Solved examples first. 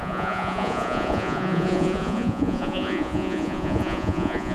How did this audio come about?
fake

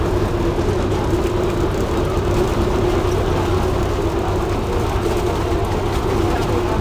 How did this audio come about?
real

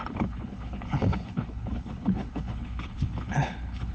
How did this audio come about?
fake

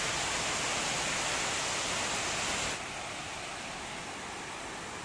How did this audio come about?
real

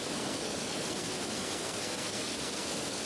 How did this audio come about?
fake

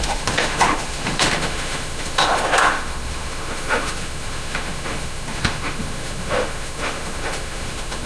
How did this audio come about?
fake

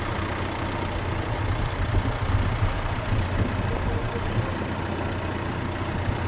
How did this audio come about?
real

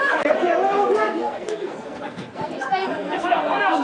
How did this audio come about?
fake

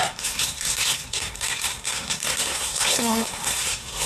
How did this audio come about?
fake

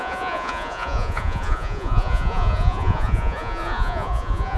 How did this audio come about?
fake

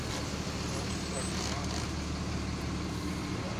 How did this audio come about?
real